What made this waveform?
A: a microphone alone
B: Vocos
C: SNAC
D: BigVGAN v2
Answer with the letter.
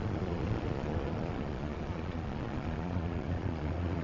B